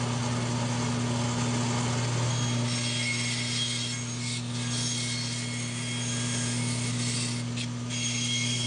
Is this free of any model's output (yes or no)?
yes